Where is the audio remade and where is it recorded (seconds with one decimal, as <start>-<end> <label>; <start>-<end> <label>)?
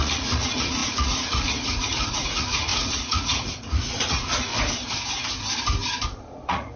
0.0-4.5 remade; 4.5-6.2 recorded; 6.2-6.8 remade